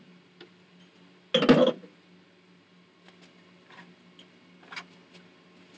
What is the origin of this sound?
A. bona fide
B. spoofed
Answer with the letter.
A